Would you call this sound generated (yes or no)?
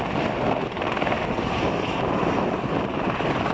yes